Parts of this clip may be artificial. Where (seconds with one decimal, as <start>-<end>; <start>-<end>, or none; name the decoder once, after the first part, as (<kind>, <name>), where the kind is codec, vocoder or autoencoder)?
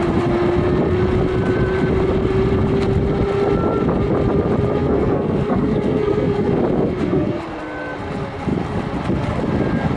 4.8-6.5 (codec, SNAC); 7.0-7.6